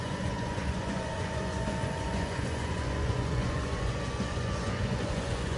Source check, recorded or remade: remade